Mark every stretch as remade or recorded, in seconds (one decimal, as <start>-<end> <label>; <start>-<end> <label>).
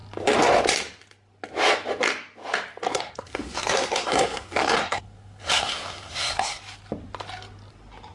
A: 0.0-2.9 recorded; 2.9-6.6 remade; 6.6-8.1 recorded